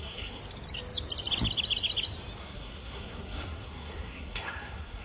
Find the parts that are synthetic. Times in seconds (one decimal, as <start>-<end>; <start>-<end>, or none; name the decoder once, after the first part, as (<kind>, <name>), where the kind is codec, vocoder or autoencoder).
0.0-0.4 (codec, SNAC); 2.4-5.0